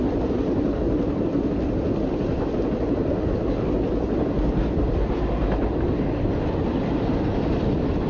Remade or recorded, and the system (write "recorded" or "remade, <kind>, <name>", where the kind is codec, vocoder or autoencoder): recorded